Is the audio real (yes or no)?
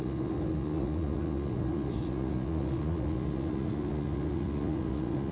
no